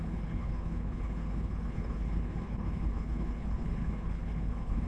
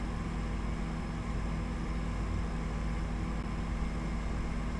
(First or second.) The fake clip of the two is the first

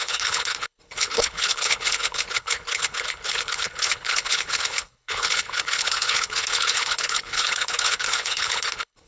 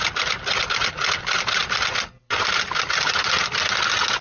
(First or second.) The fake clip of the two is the first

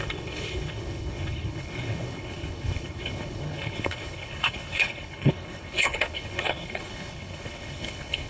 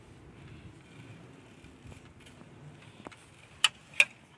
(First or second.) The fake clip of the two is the first